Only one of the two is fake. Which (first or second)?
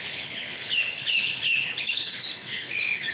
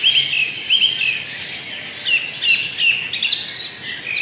first